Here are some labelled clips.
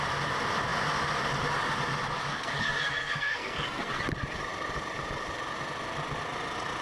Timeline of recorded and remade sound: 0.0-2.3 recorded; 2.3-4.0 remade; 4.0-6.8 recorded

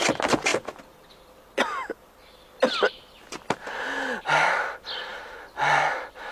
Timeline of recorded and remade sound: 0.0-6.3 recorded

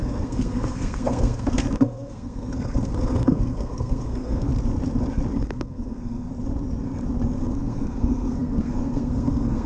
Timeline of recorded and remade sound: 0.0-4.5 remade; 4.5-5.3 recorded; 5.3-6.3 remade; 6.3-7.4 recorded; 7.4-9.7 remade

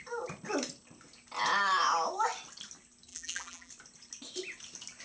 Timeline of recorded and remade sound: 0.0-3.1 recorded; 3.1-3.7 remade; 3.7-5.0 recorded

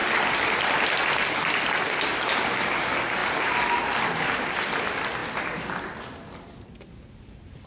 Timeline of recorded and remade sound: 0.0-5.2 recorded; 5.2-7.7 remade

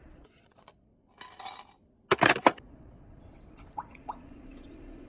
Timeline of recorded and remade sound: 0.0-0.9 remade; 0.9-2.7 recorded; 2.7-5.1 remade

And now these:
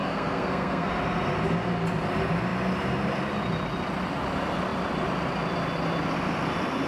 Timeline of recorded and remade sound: 0.0-0.9 remade; 0.9-6.9 recorded